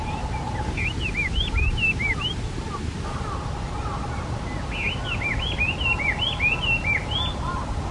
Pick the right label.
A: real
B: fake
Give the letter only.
A